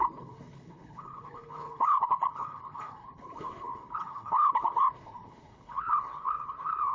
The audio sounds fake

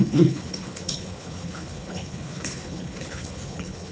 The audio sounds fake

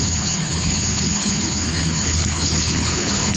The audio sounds fake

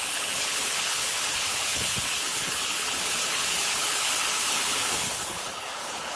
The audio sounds fake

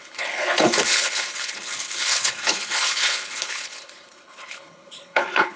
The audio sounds fake